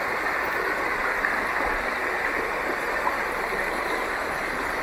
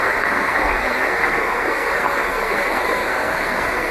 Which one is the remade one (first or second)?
second